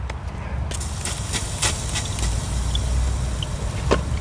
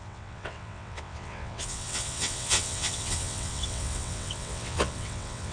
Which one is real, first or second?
first